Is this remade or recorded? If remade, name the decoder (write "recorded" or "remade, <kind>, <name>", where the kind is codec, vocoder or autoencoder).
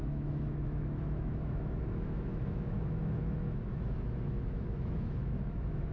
remade, autoencoder, DAC-VAE